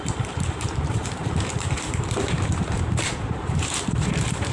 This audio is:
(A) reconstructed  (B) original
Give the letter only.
A